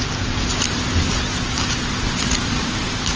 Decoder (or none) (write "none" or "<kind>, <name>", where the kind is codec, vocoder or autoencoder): none